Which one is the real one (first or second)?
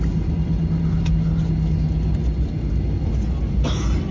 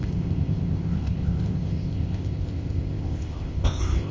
first